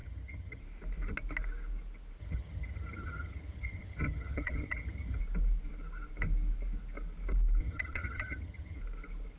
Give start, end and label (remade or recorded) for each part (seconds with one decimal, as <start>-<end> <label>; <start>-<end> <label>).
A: 0.0-0.6 remade; 0.6-2.2 recorded; 2.2-5.2 remade; 5.2-7.6 recorded; 7.6-8.8 remade; 8.8-9.4 recorded